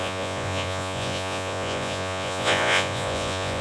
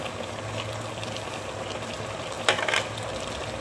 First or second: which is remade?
first